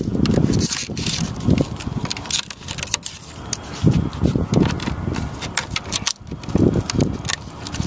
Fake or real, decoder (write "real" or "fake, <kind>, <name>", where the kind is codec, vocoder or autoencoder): real